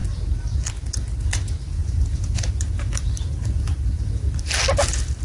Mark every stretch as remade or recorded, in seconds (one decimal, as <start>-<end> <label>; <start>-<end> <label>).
0.0-1.8 recorded; 1.8-4.4 remade; 4.4-5.2 recorded